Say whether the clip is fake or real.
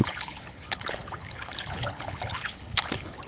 fake